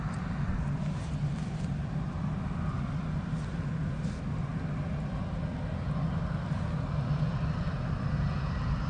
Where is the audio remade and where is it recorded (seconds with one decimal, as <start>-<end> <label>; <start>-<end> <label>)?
0.0-8.9 recorded